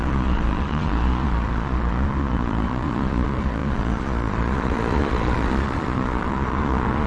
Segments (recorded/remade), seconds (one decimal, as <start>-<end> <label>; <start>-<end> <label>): 0.0-7.1 remade